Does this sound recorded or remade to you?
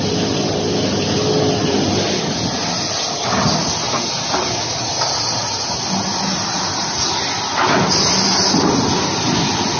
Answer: recorded